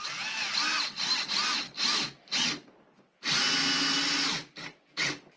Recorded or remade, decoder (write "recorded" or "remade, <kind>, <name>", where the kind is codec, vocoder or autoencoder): recorded